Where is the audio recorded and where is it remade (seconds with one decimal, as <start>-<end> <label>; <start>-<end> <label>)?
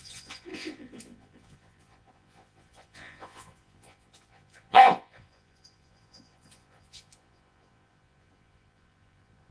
0.0-9.5 remade